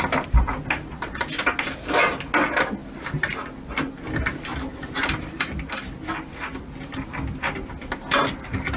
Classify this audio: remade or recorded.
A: recorded